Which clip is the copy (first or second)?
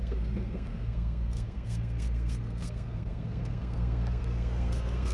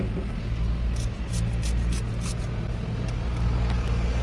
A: first